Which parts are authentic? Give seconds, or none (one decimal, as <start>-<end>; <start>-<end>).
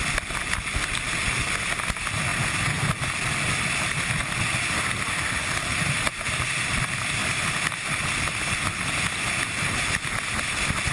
0.0-5.7; 6.5-10.9